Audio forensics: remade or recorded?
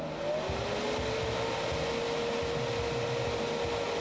recorded